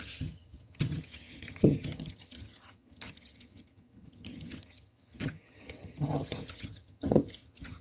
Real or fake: fake